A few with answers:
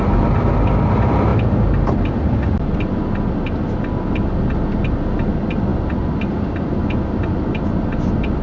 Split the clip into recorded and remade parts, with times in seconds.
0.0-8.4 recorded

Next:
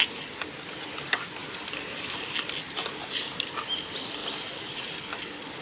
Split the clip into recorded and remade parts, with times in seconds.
0.0-5.6 recorded

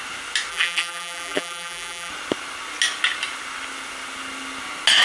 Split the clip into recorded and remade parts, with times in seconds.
0.0-0.5 recorded; 0.5-2.1 remade; 2.1-5.0 recorded